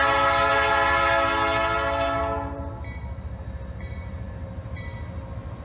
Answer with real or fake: real